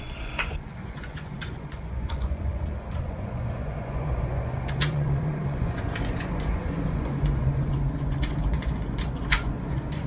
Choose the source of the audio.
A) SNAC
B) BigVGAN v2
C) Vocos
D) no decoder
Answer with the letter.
C